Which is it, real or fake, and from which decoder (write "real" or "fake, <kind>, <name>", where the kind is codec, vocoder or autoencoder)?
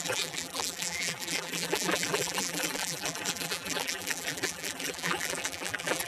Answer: fake, vocoder, BigVGAN v2